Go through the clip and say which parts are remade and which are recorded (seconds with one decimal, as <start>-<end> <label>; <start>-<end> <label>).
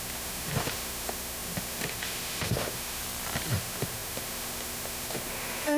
0.0-3.0 remade; 3.0-3.5 recorded; 3.5-5.8 remade